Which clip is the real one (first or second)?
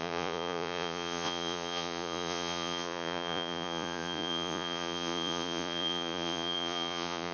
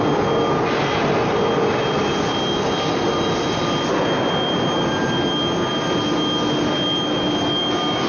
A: second